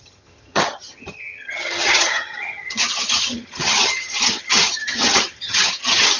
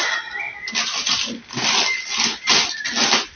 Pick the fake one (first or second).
first